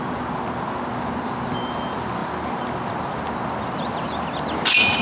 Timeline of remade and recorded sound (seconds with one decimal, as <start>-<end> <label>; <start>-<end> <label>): 0.0-5.0 recorded